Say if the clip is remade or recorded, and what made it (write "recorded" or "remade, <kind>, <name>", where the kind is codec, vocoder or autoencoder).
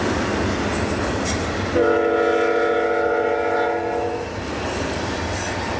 recorded